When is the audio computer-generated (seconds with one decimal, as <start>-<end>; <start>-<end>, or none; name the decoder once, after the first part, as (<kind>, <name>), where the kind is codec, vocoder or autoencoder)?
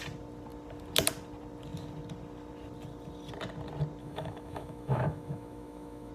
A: 4.0-6.1 (autoencoder, DAC-VAE)